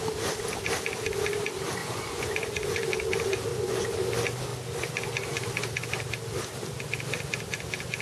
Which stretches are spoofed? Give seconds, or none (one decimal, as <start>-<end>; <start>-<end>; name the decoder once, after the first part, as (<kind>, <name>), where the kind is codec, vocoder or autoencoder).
1.8-2.9 (vocoder, Vocos); 3.5-4.1